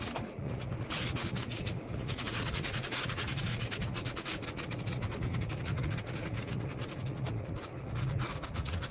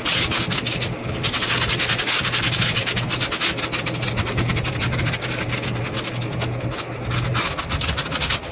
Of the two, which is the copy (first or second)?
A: first